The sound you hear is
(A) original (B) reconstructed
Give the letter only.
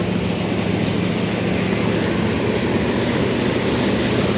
A